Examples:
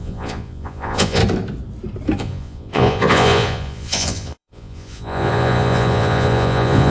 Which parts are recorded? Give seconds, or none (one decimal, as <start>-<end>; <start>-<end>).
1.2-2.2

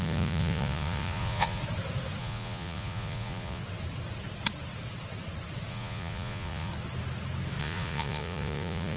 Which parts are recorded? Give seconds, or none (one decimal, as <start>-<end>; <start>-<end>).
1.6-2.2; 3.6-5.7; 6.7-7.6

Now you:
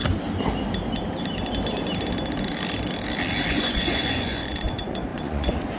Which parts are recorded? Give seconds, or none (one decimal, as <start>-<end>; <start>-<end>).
0.0-3.5